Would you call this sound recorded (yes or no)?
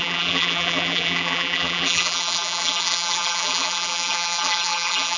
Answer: no